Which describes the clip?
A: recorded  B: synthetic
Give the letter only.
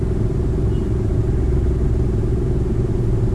A